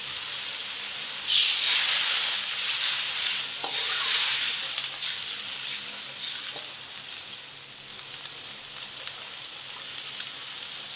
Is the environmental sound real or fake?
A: real